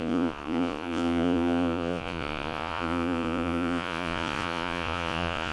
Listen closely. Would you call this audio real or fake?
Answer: fake